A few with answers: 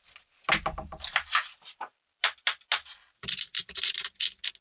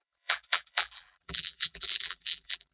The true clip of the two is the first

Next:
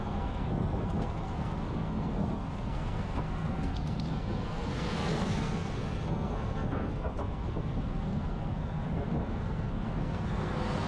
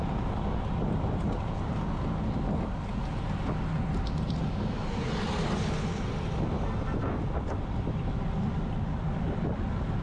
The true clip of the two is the second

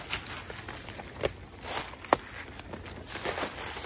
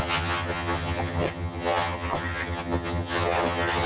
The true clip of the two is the first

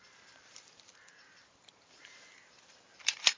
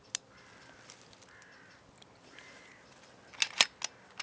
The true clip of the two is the second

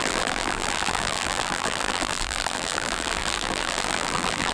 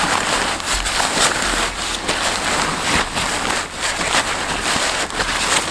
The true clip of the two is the second